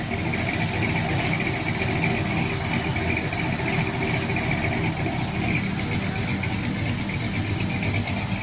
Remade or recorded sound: recorded